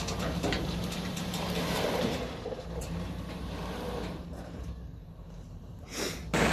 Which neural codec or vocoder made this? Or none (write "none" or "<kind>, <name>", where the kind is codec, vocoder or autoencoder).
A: vocoder, BigVGAN v2